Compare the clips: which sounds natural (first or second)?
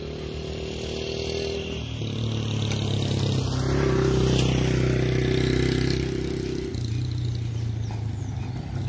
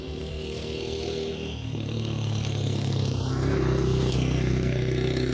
first